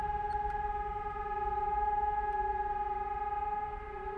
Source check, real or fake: fake